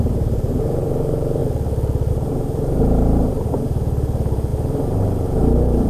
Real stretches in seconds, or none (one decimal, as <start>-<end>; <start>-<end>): 1.4-2.1